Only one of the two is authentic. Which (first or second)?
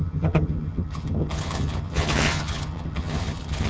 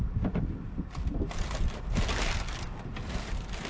second